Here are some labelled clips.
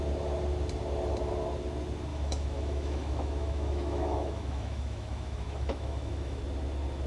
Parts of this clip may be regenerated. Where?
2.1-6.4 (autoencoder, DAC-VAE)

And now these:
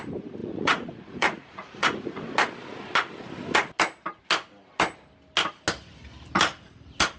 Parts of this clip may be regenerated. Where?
0.4-2.3 (vocoder, Vocos)

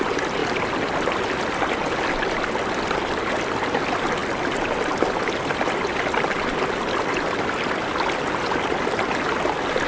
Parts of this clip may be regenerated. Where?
none

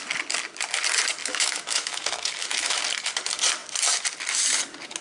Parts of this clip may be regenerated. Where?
1.2-2.8 (autoencoder, DAC-VAE)

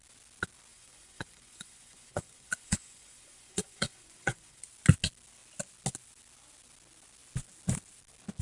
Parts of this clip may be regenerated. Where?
0.7-4.6 (vocoder, Vocos)

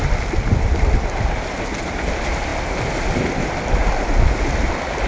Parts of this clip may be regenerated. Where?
none